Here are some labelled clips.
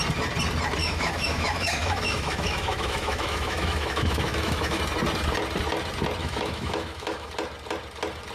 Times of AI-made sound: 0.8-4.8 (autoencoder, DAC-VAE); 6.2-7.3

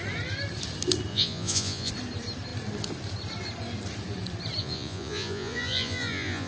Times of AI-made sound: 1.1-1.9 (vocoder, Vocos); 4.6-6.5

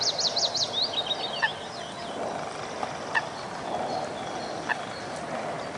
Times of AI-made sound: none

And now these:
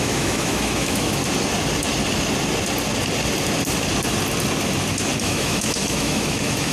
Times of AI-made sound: 0.0-1.2 (autoencoder, DAC-VAE); 5.2-6.7

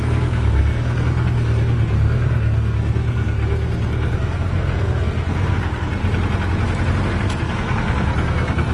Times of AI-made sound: 0.0-6.0 (codec, SNAC); 7.1-8.7

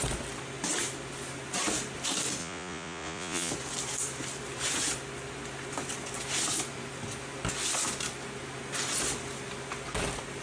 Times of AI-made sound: 2.4-3.5 (vocoder, Vocos)

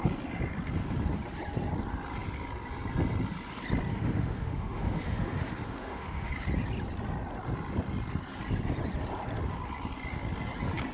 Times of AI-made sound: 3.9-6.3 (autoencoder, DAC-VAE)